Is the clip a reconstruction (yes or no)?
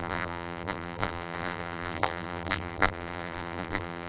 yes